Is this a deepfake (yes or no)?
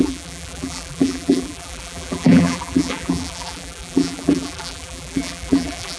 yes